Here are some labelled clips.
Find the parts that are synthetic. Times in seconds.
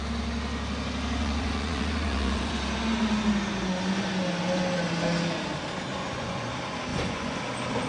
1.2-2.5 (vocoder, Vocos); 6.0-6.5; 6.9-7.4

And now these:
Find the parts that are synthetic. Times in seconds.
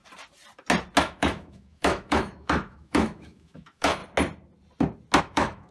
1.0-4.0 (autoencoder, DAC-VAE); 5.2-5.7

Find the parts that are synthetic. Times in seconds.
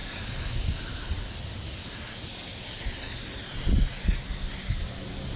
none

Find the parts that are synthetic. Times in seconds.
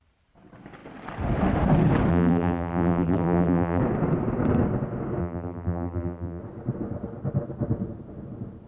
2.1-3.8 (vocoder, BigVGAN v2); 5.2-6.4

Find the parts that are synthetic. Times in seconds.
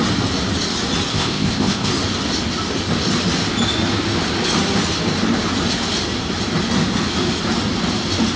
1.1-1.9 (codec, ZipCodec)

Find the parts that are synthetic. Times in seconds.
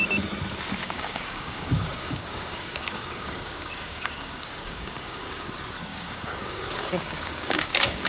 0.8-5.5 (codec, DAC); 5.9-8.1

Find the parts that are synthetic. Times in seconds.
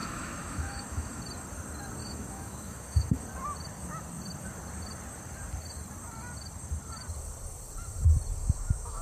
0.0-1.2 (autoencoder, DAC-VAE); 2.0-3.2; 8.4-9.0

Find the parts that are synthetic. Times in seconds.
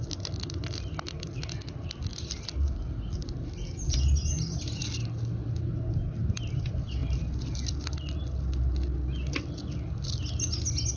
none